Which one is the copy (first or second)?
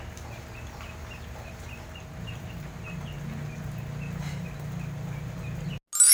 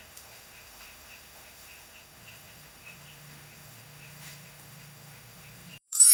second